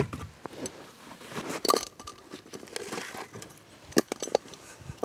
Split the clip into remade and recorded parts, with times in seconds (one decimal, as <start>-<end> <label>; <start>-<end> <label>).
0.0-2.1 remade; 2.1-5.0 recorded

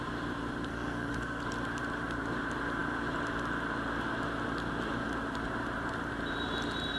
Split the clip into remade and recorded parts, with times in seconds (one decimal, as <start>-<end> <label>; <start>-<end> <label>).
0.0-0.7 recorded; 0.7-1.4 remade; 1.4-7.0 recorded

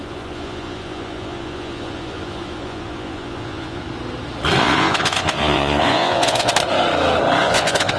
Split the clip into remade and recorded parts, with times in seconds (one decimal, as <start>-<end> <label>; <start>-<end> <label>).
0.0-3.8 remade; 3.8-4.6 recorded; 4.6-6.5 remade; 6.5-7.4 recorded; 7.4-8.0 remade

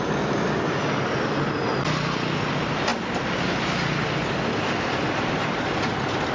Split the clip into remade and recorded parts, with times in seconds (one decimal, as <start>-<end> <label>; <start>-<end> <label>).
0.0-6.3 recorded

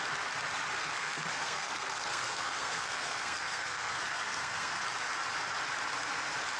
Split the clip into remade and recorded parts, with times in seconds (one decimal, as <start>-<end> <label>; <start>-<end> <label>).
0.0-0.8 recorded; 0.8-4.8 remade; 4.8-6.6 recorded

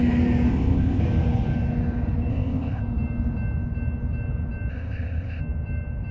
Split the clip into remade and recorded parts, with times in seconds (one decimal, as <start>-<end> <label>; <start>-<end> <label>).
0.0-0.5 recorded; 0.5-1.0 remade; 1.0-2.3 recorded; 2.3-2.8 remade; 2.8-4.7 recorded; 4.7-5.4 remade; 5.4-6.1 recorded